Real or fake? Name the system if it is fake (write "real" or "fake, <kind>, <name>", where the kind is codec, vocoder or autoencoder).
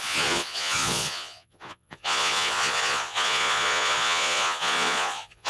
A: fake, vocoder, Vocos